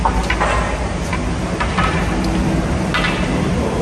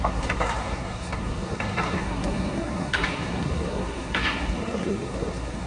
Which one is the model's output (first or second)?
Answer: second